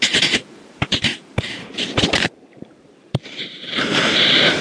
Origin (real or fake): fake